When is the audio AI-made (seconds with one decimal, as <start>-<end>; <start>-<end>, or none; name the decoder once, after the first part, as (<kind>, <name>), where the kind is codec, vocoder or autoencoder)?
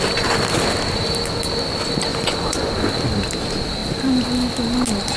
2.1-2.7 (vocoder, Vocos)